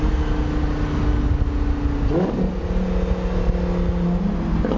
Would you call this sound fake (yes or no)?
no